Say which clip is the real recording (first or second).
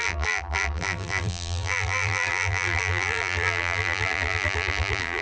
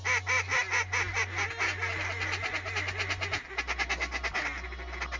second